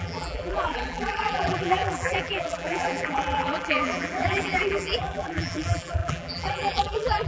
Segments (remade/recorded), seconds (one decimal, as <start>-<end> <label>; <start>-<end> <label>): 0.0-7.3 remade